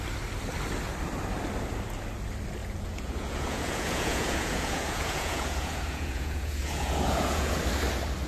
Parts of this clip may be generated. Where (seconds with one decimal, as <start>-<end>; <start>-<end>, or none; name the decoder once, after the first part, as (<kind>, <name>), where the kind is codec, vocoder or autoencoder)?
2.6-7.6 (vocoder, Vocos)